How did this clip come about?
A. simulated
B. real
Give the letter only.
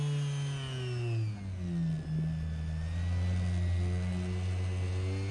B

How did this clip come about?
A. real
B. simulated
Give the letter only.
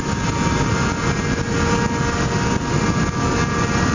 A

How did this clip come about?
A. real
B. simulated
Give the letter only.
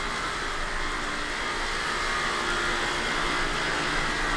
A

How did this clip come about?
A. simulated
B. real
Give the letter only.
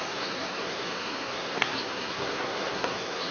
A